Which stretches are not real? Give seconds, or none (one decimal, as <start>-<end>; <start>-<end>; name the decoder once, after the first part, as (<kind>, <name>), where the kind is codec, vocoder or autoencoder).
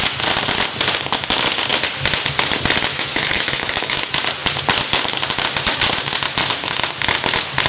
2.9-4.0 (autoencoder, DAC-VAE)